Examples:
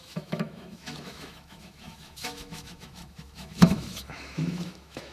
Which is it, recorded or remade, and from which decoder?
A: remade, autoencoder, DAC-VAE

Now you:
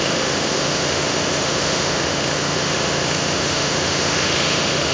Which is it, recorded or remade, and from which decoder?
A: remade, autoencoder, DAC-VAE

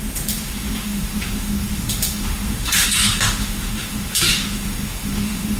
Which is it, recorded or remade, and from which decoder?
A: remade, autoencoder, DAC-VAE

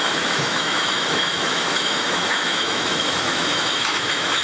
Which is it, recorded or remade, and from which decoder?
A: remade, autoencoder, DAC-VAE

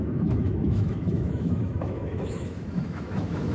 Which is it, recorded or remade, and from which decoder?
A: remade, autoencoder, DAC-VAE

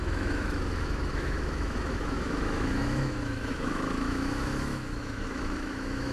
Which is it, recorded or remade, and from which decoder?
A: remade, autoencoder, DAC-VAE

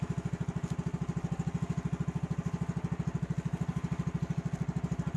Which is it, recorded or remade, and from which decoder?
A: recorded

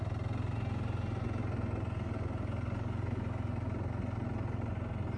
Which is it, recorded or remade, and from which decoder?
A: recorded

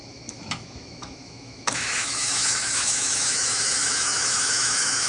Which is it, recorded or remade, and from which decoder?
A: remade, autoencoder, DAC-VAE